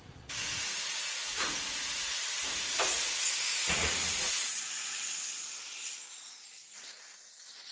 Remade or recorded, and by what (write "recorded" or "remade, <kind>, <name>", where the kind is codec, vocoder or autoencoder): remade, vocoder, Vocos